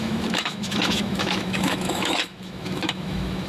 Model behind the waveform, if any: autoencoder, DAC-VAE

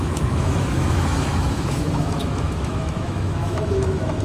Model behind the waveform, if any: autoencoder, DAC-VAE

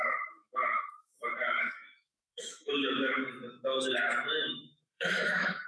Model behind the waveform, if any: autoencoder, DAC-VAE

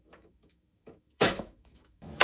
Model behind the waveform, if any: autoencoder, DAC-VAE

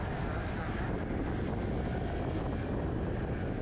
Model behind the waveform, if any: none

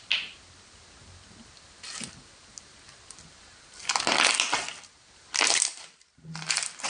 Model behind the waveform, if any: none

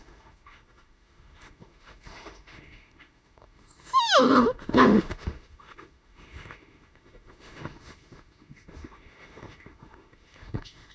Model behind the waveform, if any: autoencoder, DAC-VAE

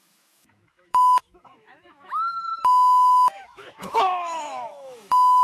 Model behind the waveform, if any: autoencoder, DAC-VAE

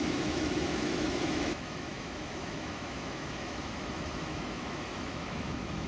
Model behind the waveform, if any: autoencoder, DAC-VAE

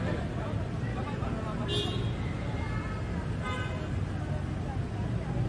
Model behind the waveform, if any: none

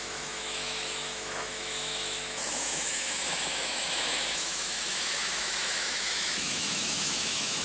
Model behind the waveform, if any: autoencoder, DAC-VAE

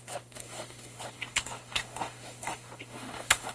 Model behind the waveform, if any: autoencoder, DAC-VAE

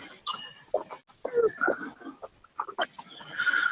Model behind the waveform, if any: none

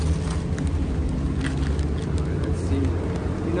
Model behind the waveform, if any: none